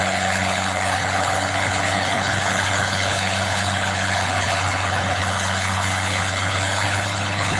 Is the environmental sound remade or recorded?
remade